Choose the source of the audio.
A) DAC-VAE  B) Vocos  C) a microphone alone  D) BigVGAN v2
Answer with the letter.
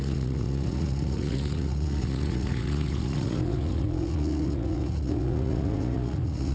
B